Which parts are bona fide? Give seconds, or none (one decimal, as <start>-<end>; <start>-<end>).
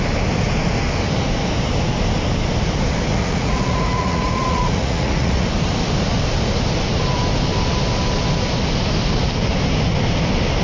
0.0-3.1; 5.5-10.6